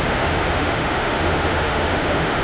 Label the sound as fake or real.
fake